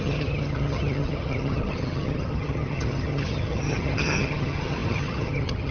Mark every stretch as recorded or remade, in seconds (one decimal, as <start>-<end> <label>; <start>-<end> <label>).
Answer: 0.0-5.7 remade